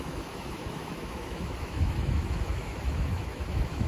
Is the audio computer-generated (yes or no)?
yes